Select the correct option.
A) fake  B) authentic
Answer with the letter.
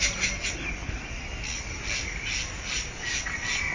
B